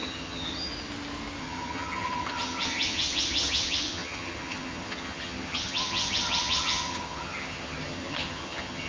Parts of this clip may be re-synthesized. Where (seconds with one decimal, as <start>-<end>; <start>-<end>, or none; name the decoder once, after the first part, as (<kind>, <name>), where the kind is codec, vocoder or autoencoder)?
0.0-0.7 (vocoder, HiFi-GAN); 1.4-8.9